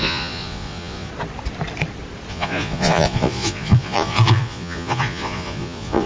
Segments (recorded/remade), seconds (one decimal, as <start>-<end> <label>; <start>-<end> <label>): 0.0-1.1 remade; 1.1-2.3 recorded; 2.3-6.1 remade